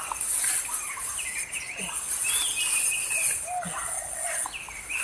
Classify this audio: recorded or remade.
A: recorded